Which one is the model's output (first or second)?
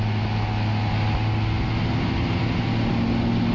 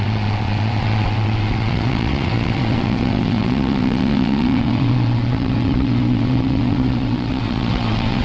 second